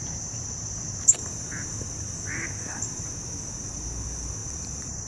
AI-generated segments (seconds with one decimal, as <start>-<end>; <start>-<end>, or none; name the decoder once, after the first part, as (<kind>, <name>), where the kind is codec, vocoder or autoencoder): 0.0-3.1 (vocoder, BigVGAN v2); 4.4-5.1